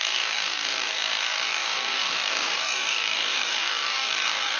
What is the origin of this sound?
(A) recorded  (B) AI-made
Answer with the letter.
B